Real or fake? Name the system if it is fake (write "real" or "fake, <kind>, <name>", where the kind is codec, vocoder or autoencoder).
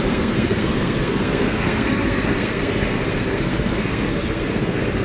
fake, codec, SNAC